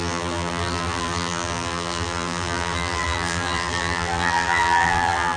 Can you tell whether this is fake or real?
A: fake